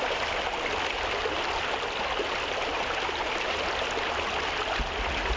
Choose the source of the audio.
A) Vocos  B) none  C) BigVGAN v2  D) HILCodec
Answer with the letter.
B